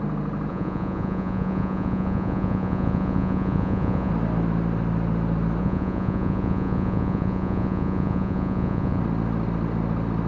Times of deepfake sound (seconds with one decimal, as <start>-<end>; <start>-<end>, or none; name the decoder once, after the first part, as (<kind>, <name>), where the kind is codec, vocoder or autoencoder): 0.5-4.1 (vocoder, Vocos); 5.6-9.0